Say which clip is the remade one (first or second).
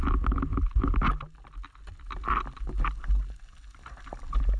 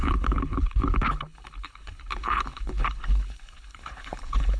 second